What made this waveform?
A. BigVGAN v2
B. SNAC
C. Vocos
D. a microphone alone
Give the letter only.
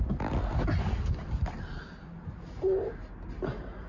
D